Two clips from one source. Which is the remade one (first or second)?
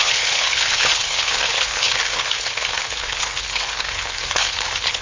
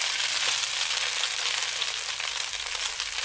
first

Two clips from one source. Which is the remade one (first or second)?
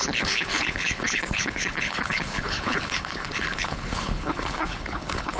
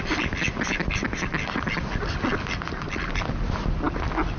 first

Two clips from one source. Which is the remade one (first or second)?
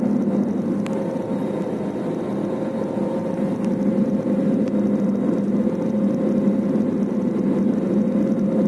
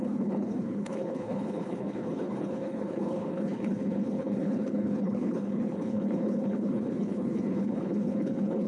second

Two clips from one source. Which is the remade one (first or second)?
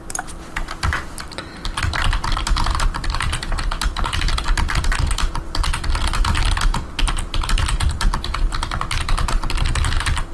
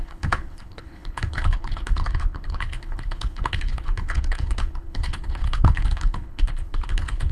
second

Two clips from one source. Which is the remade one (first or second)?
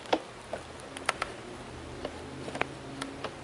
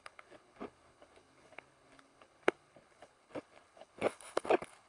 second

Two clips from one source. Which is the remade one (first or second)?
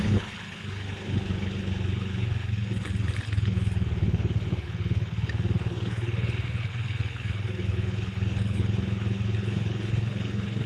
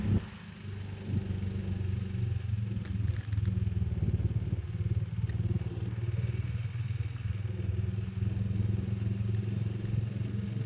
first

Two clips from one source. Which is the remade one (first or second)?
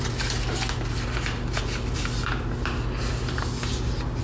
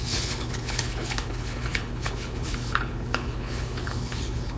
second